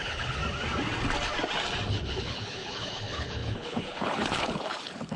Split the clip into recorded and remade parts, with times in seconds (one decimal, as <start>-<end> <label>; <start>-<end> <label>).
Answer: 0.0-0.4 remade; 0.4-1.9 recorded; 1.9-5.2 remade